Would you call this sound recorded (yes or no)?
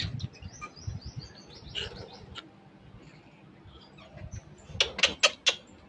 yes